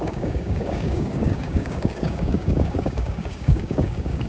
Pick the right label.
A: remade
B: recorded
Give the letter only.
A